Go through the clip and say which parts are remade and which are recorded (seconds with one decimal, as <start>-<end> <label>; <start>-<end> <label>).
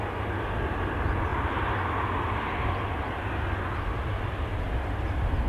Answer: 0.0-5.5 recorded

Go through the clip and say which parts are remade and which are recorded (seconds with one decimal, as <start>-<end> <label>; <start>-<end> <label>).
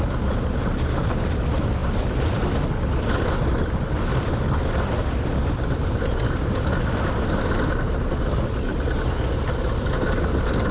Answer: 0.0-1.8 recorded; 1.8-6.3 remade; 6.3-10.7 recorded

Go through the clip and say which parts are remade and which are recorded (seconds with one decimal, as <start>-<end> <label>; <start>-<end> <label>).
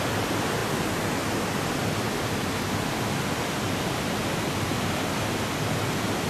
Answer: 0.0-6.3 recorded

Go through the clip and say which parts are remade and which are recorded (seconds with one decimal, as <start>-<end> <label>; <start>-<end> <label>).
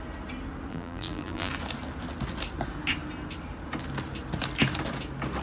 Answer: 0.0-0.7 recorded; 0.7-1.5 remade; 1.5-5.4 recorded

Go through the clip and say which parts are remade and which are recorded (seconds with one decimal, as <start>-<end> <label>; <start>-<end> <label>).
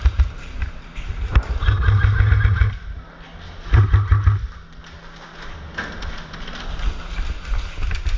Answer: 0.0-1.8 remade; 1.8-8.2 recorded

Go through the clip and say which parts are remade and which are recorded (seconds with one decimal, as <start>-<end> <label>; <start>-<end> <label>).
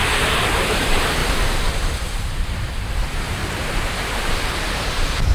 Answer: 0.0-1.2 remade; 1.2-2.2 recorded; 2.2-3.4 remade; 3.4-4.2 recorded; 4.2-5.3 remade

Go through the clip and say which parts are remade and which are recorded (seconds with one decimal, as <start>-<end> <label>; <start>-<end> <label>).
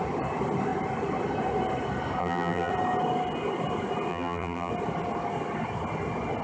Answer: 0.0-2.2 recorded; 2.2-2.7 remade; 2.7-4.1 recorded; 4.1-4.7 remade; 4.7-6.4 recorded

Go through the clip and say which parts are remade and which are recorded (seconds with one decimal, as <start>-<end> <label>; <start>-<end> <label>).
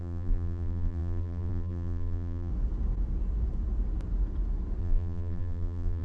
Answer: 0.0-2.5 remade; 2.5-4.8 recorded; 4.8-6.0 remade